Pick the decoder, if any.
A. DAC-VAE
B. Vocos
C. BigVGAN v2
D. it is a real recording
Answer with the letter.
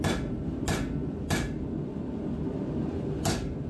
D